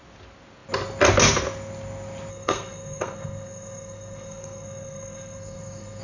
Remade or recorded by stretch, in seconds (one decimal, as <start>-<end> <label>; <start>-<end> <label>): 0.0-2.3 recorded; 2.3-6.0 remade